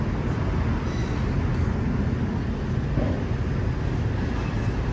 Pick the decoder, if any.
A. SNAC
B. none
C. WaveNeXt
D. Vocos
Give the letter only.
B